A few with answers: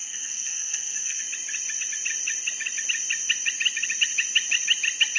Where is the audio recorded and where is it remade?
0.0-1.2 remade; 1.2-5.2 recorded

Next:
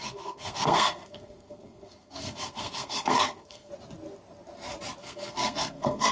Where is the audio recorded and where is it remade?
0.0-3.7 remade; 3.7-5.0 recorded; 5.0-6.1 remade

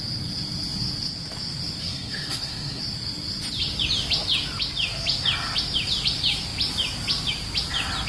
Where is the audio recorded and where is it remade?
0.0-1.8 recorded; 1.8-2.8 remade; 2.8-8.1 recorded